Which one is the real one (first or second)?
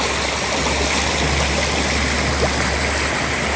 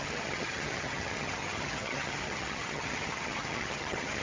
first